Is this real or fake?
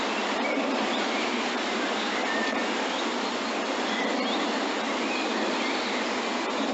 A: real